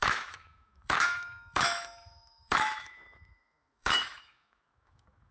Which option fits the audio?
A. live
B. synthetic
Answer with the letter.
B